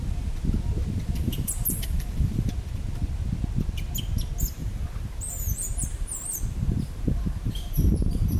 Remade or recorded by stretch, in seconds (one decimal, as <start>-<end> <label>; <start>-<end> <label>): 0.0-1.2 recorded; 1.2-2.5 remade; 2.5-4.6 recorded; 4.6-8.4 remade